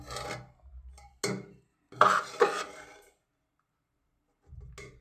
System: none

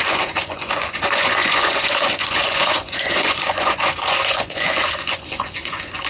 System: vocoder, Vocos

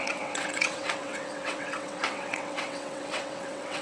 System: vocoder, WaveNeXt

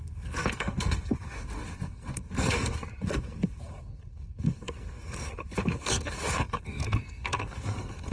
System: codec, SNAC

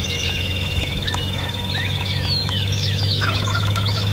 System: autoencoder, DAC-VAE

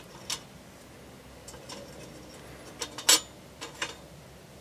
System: none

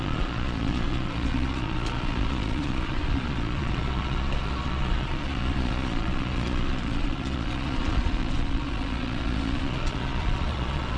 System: vocoder, Vocos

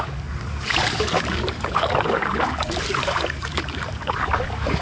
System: codec, DAC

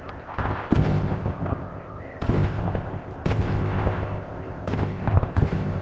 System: codec, ZipCodec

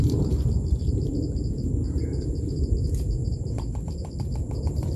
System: vocoder, BigVGAN v2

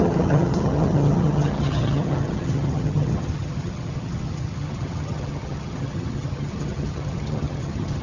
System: vocoder, HiFi-GAN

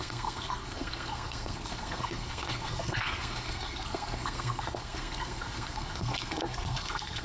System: codec, SNAC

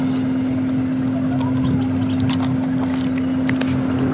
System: none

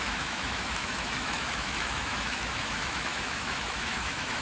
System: autoencoder, DAC-VAE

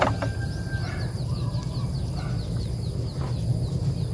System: none